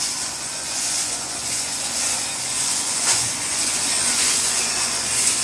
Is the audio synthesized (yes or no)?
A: yes